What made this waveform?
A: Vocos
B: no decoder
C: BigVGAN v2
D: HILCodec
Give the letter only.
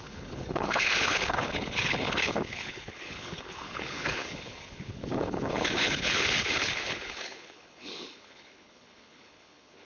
D